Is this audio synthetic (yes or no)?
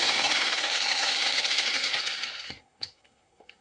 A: yes